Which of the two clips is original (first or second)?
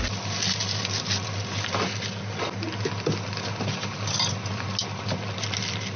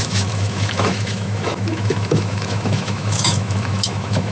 first